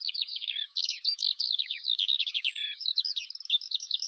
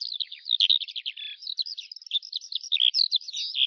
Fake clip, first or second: first